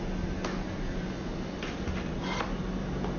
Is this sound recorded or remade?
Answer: recorded